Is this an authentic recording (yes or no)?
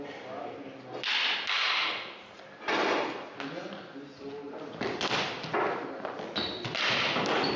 yes